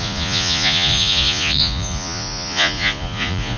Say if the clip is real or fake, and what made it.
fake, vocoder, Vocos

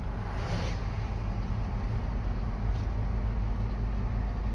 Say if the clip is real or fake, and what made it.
real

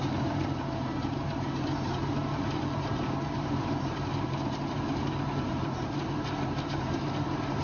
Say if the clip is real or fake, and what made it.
fake, vocoder, BigVGAN v2